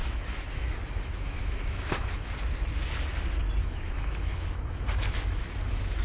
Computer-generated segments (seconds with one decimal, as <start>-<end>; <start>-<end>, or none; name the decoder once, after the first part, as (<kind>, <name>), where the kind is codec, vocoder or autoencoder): 0.0-2.3 (autoencoder, DAC-VAE); 3.6-6.0